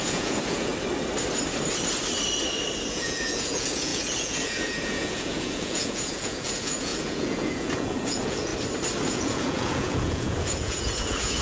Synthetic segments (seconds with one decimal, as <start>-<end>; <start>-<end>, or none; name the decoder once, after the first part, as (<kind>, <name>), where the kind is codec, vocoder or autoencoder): 0.0-0.7 (vocoder, Vocos); 2.9-8.5; 9.1-11.4